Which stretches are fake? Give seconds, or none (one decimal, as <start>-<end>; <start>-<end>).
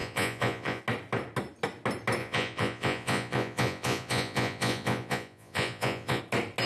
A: 0.0-0.8; 2.2-6.2